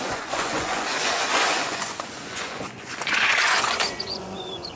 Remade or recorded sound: remade